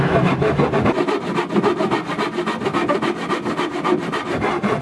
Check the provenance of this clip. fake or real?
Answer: real